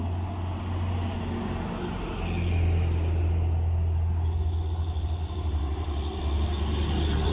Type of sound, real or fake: real